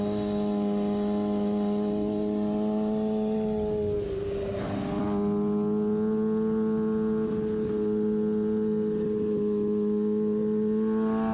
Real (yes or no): yes